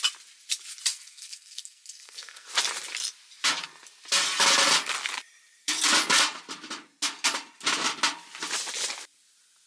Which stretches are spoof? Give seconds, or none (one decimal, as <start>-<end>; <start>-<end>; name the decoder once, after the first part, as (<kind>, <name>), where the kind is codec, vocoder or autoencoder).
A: 0.9-2.5 (codec, SNAC)